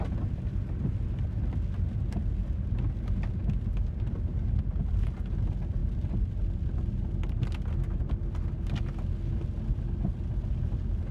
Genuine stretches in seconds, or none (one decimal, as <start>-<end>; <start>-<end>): 0.0-11.1